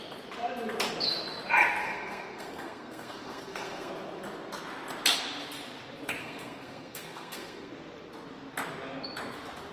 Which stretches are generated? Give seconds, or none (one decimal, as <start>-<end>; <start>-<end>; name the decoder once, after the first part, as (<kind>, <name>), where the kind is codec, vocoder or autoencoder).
1.8-3.9 (codec, SNAC); 6.2-7.7